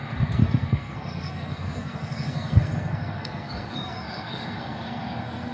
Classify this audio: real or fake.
fake